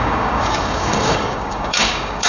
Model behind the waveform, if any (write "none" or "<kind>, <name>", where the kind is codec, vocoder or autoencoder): codec, DAC